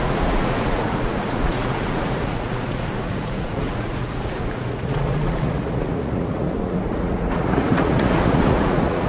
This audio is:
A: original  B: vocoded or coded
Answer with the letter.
B